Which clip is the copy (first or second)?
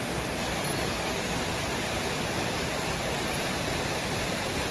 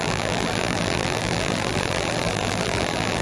second